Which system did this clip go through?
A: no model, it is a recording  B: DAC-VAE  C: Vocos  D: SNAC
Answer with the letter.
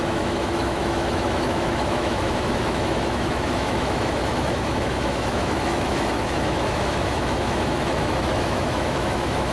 B